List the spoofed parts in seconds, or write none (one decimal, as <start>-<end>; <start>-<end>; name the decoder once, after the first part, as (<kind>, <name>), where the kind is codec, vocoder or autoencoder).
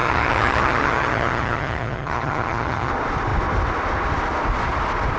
0.0-2.9 (vocoder, HiFi-GAN)